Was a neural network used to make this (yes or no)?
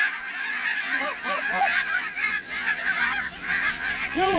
yes